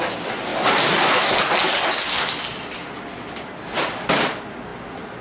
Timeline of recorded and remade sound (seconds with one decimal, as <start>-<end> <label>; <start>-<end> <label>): 0.0-5.2 recorded